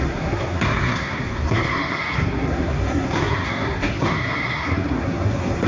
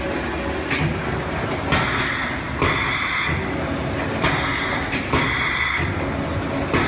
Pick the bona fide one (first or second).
second